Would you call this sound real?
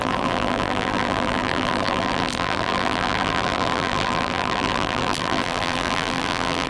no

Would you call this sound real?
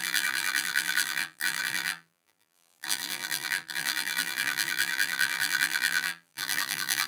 no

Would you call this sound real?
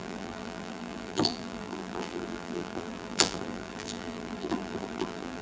no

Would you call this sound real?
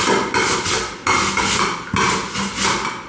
yes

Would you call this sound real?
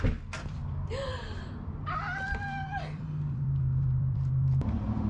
no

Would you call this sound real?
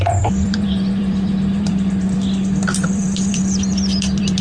no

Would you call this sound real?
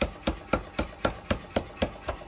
no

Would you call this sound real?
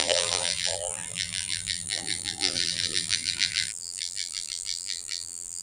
no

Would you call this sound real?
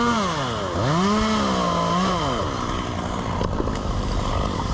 yes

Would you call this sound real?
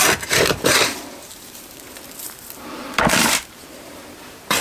no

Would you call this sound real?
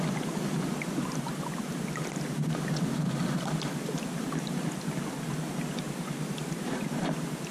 yes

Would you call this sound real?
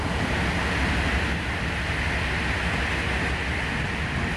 yes